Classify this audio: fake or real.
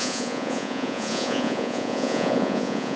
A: fake